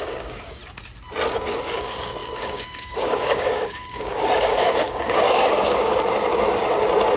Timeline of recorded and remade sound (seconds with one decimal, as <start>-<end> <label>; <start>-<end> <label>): 0.0-0.6 remade; 0.6-1.3 recorded; 1.3-5.9 remade; 5.9-7.2 recorded